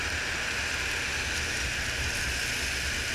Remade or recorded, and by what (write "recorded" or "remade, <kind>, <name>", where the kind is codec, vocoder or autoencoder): recorded